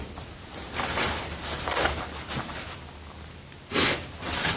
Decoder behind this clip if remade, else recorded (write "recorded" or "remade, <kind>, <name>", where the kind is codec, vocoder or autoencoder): recorded